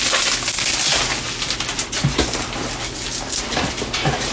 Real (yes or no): yes